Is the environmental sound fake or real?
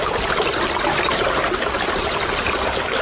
real